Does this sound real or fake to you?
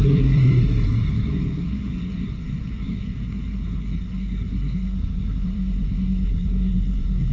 fake